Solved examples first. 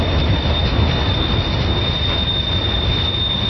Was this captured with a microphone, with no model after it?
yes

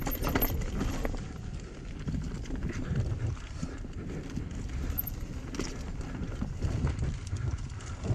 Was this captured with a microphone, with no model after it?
yes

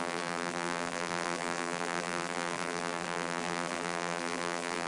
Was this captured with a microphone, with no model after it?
no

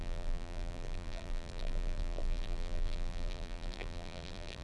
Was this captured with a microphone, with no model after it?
no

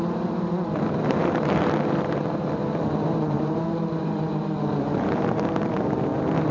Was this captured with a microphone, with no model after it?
no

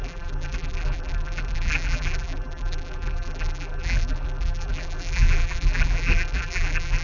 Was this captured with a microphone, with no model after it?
no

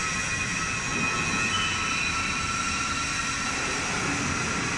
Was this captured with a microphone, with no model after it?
yes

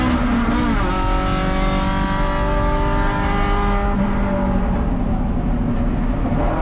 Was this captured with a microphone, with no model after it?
yes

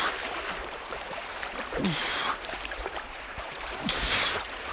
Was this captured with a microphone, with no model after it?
no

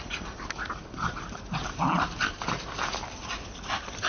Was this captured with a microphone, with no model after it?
no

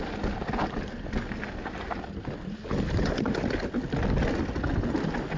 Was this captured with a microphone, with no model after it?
yes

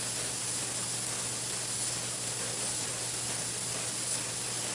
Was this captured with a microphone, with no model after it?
yes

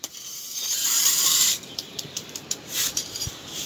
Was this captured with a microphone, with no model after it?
no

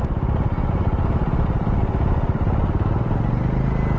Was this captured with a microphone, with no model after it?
yes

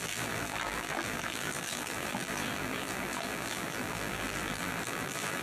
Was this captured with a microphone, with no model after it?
no